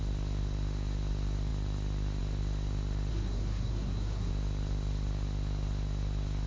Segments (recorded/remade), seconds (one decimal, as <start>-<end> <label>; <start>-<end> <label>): 0.0-3.1 recorded; 3.1-4.3 remade; 4.3-6.5 recorded